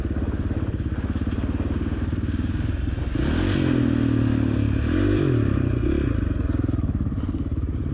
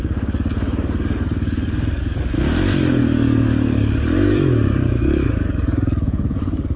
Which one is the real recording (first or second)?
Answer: first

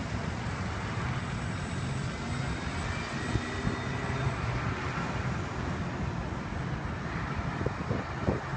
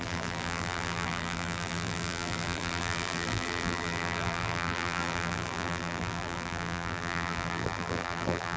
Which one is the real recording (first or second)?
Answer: first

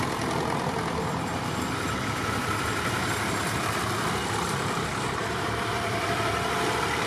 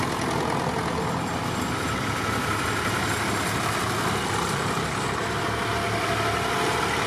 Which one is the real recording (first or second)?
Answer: second